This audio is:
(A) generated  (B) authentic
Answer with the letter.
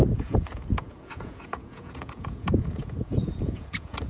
A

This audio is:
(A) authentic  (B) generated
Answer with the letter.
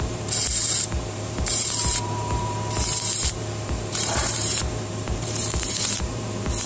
B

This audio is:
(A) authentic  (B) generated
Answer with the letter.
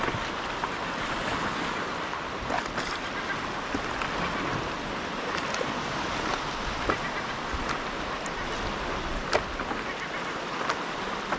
A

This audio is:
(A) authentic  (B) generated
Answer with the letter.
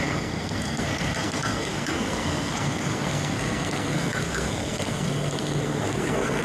B